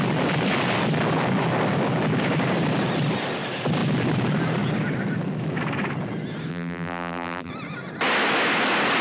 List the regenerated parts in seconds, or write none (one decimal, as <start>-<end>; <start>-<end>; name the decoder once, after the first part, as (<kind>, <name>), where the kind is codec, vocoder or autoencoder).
6.5-7.5 (vocoder, BigVGAN v2)